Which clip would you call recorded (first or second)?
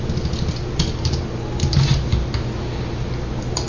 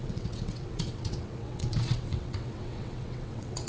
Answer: first